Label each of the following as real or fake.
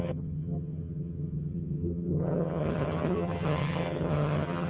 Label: fake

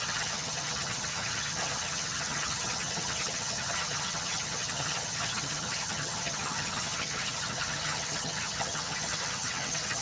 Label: fake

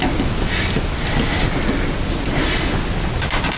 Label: real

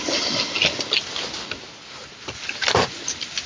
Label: real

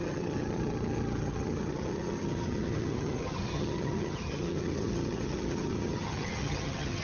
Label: fake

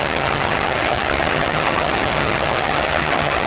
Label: fake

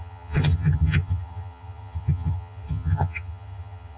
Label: fake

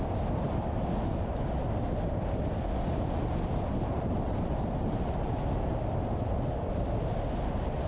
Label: real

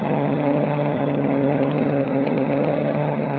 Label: fake